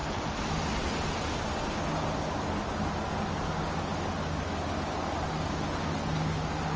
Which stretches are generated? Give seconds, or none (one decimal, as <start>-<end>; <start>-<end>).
none